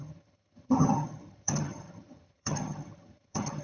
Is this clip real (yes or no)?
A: no